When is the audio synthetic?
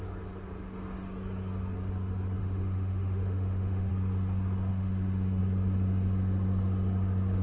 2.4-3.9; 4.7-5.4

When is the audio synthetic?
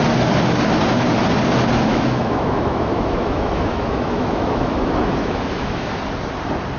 1.9-6.0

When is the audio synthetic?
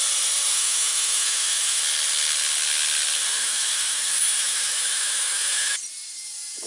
0.5-1.8; 3.4-5.8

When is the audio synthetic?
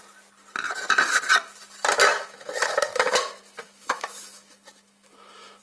2.1-5.6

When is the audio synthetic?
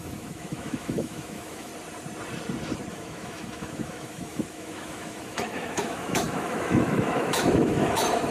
0.0-1.7; 2.9-8.3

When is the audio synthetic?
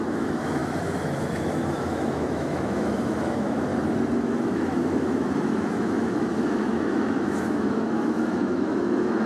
0.0-3.7; 4.2-9.3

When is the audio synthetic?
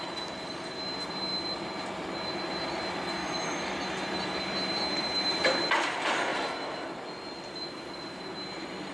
3.2-3.7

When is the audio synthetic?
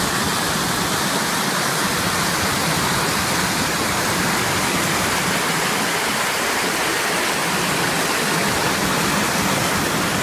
none